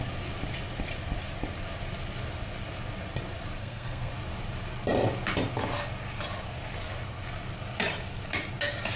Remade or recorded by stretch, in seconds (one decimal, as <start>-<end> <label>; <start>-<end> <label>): 0.0-3.6 recorded; 3.6-4.1 remade; 4.1-9.0 recorded